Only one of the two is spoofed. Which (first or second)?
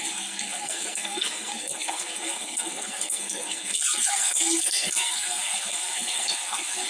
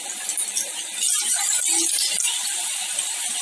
first